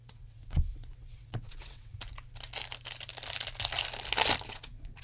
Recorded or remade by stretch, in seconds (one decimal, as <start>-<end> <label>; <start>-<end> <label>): 0.0-1.9 remade; 1.9-4.5 recorded; 4.5-5.0 remade